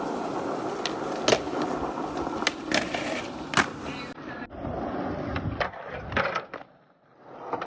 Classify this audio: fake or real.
real